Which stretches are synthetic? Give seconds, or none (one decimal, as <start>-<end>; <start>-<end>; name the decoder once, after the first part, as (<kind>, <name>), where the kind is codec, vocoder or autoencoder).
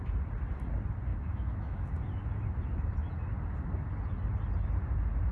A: 1.1-1.9 (autoencoder, DAC-VAE)